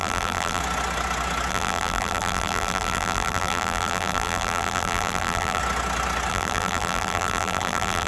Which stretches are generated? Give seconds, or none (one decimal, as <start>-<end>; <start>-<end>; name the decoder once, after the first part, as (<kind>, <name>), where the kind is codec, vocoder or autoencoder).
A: 0.0-0.6 (vocoder, BigVGAN v2); 1.5-5.6; 6.3-8.1